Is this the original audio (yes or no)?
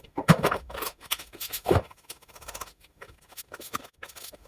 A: no